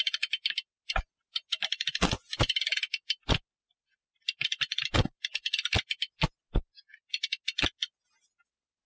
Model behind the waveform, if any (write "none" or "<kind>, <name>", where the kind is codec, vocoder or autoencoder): none